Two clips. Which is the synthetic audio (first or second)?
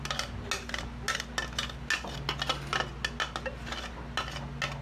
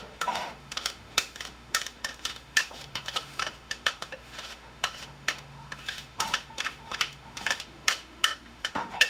second